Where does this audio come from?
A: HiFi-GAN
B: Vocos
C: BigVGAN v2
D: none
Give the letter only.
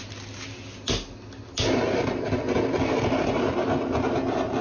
D